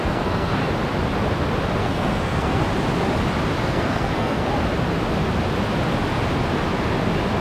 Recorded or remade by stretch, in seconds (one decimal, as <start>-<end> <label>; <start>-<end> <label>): 0.0-0.6 remade; 0.6-1.8 recorded; 1.8-2.6 remade; 2.6-3.6 recorded; 3.6-4.5 remade; 4.5-7.4 recorded